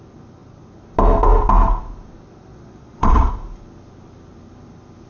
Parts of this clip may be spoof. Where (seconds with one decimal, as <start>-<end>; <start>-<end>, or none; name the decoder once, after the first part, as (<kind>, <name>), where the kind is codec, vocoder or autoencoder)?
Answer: 2.5-3.3 (vocoder, Vocos)